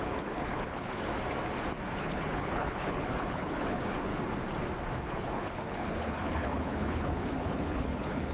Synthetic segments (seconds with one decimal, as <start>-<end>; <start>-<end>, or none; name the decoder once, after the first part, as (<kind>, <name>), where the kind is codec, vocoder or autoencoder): 0.0-1.1 (codec, HILCodec); 2.0-4.1; 5.0-8.3